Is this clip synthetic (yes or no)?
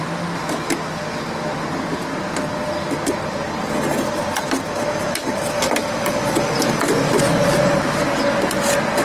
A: no